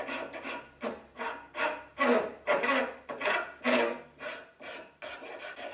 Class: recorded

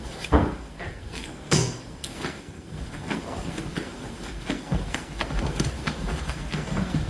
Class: remade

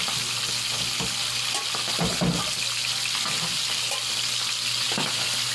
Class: recorded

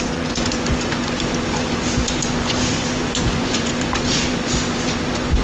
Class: remade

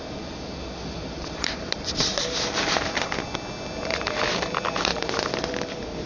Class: remade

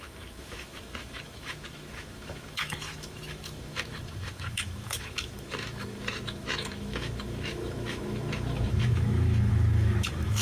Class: remade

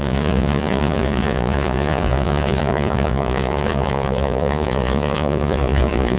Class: remade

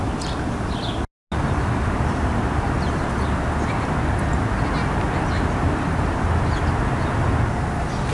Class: recorded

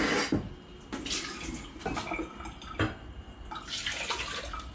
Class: recorded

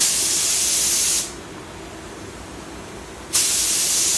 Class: recorded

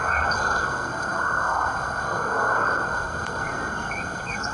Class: remade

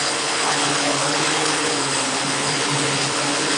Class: remade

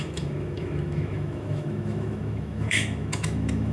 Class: remade